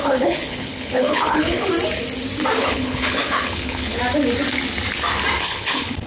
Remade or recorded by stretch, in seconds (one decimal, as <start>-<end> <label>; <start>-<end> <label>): 0.0-1.7 remade; 1.7-2.6 recorded; 2.6-4.0 remade; 4.0-5.4 recorded; 5.4-6.1 remade